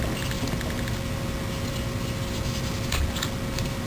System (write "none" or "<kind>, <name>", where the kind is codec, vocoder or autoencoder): none